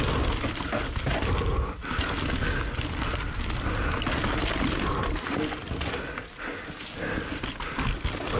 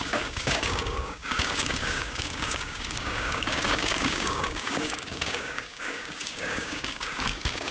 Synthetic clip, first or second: second